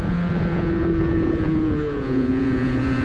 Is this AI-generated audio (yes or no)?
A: yes